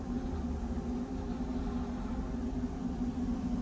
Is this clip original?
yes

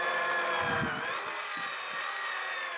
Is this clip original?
yes